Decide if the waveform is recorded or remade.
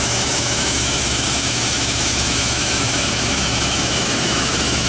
remade